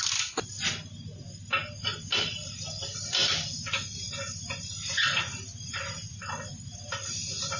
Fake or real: real